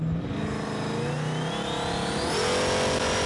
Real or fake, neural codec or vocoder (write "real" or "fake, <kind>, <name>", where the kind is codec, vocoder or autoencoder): real